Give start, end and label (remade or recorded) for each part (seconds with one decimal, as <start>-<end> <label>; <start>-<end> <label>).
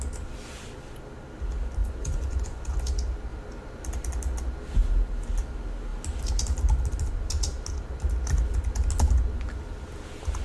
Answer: 0.0-1.8 recorded; 1.8-2.6 remade; 2.6-10.4 recorded